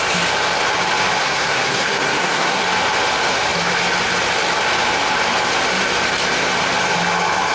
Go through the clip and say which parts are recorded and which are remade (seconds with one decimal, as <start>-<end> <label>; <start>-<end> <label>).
0.0-1.2 recorded; 1.2-2.6 remade; 2.6-7.5 recorded